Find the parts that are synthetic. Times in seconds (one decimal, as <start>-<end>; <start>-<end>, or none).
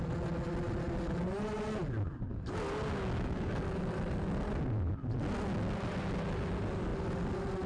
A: none